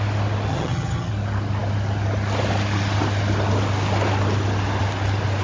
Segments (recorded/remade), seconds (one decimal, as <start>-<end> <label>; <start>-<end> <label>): 0.0-0.5 recorded; 0.5-1.1 remade; 1.1-5.4 recorded